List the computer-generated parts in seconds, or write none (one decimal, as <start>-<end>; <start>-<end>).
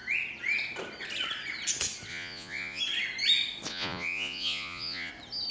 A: 2.1-2.8; 3.7-5.1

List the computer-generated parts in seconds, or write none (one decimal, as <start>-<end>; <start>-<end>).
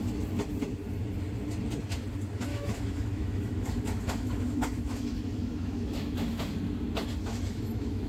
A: 2.5-6.4; 7.3-8.1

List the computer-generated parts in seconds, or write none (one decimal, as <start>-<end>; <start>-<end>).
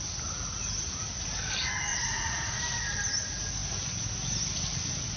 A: 1.9-2.6